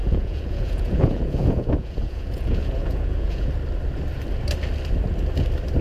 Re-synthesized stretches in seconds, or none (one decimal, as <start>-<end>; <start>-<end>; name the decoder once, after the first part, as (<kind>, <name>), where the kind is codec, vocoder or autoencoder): 0.0-3.5 (vocoder, Vocos)